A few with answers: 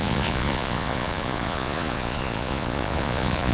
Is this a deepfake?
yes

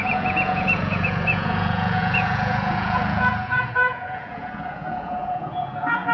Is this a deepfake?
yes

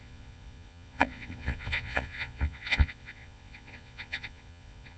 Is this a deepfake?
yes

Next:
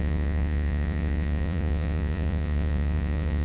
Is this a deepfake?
yes